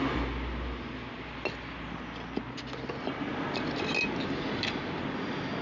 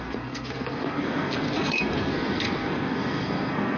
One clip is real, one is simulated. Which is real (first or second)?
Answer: first